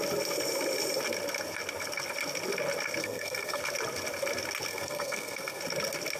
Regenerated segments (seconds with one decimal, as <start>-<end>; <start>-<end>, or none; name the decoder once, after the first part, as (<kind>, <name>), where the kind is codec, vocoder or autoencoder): 3.0-3.6 (codec, SNAC); 4.7-5.6